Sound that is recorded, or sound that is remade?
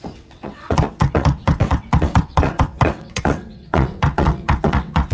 remade